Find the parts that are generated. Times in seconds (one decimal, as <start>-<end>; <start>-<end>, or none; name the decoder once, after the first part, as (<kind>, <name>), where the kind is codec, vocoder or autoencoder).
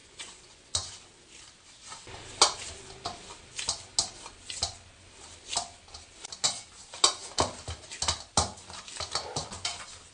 0.0-0.9 (vocoder, Vocos)